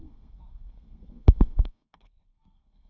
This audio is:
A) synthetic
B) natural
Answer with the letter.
A